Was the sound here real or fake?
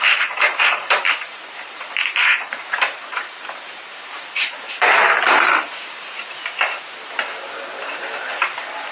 fake